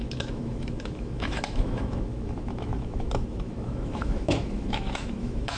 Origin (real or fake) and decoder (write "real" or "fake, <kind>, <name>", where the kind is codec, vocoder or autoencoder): fake, autoencoder, DAC-VAE